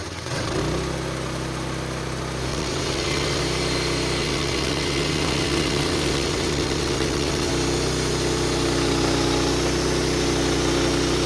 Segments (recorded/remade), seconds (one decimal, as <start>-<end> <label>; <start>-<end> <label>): 0.0-0.6 remade; 0.6-2.5 recorded; 2.5-3.4 remade; 3.4-4.2 recorded; 4.2-7.5 remade; 7.5-11.3 recorded